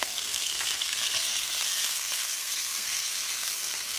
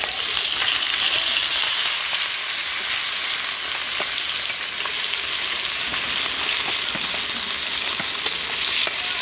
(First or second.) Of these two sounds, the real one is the second